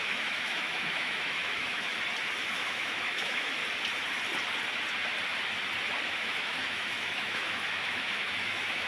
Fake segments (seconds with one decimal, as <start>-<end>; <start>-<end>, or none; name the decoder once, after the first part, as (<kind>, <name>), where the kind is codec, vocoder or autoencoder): 0.0-1.9 (autoencoder, DAC-VAE); 2.5-3.6; 6.1-8.9